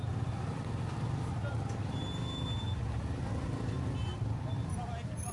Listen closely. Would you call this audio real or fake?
real